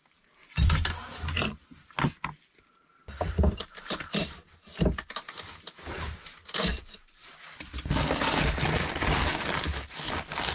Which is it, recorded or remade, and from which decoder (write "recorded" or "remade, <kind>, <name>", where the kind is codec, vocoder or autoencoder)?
recorded